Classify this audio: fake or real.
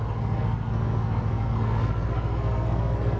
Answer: fake